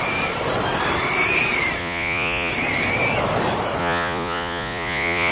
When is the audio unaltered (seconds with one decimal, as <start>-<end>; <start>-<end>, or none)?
0.0-1.8; 2.5-3.8